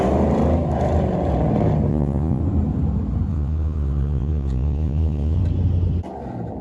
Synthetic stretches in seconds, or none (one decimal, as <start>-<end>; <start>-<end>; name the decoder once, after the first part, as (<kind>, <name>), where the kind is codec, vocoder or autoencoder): 1.9-2.4 (vocoder, Vocos); 3.3-5.4